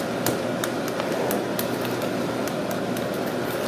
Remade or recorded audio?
recorded